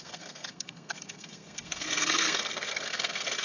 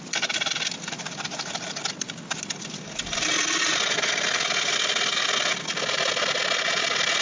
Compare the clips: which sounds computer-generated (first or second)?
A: first